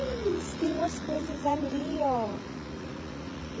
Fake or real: fake